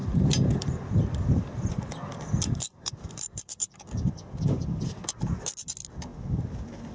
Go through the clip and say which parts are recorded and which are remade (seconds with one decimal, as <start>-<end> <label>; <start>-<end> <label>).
0.0-4.1 remade; 4.1-6.9 recorded

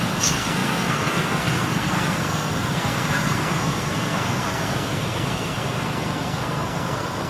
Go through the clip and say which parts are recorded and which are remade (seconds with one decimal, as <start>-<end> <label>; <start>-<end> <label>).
0.0-7.3 remade

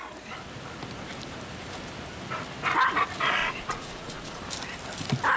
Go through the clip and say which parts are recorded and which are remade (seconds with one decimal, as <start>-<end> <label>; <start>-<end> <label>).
0.0-3.4 recorded; 3.4-4.4 remade; 4.4-5.4 recorded